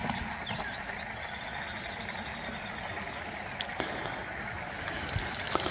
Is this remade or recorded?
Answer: recorded